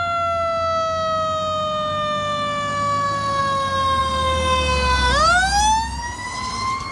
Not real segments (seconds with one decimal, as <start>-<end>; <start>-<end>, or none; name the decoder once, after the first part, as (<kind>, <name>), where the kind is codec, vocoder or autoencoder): none